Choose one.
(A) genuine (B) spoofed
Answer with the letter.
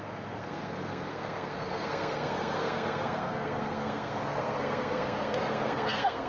B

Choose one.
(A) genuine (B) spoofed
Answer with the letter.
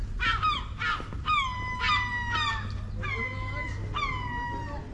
A